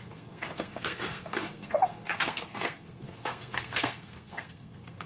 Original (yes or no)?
no